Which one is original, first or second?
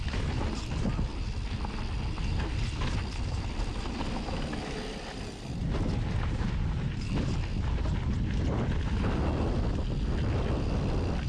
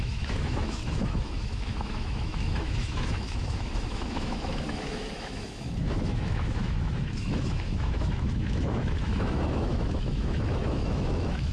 first